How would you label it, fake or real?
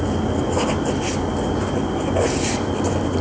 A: real